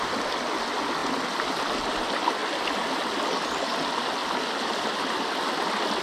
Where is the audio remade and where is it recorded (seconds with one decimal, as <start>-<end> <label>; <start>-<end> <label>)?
0.0-1.0 recorded; 1.0-1.7 remade; 1.7-6.0 recorded